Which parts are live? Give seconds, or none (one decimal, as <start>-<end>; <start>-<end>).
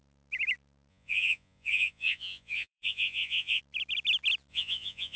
0.0-0.9; 3.6-4.5